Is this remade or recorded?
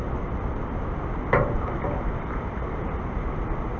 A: recorded